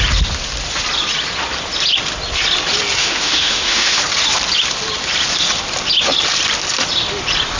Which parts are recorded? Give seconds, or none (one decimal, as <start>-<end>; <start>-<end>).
0.0-3.0; 4.0-7.6